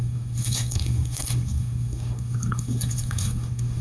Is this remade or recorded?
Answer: remade